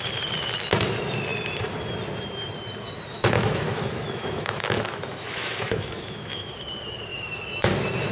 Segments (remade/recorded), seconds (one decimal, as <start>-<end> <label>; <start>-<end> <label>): 0.0-3.1 recorded; 3.1-6.5 remade; 6.5-7.1 recorded; 7.1-8.1 remade